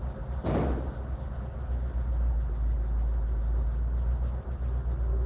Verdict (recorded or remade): recorded